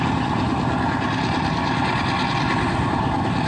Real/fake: real